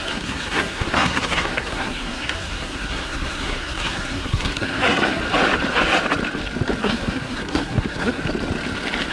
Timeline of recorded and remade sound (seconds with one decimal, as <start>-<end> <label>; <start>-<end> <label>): 0.0-5.2 remade; 5.2-6.8 recorded; 6.8-8.2 remade; 8.2-9.1 recorded